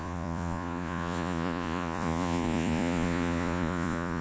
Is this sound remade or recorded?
remade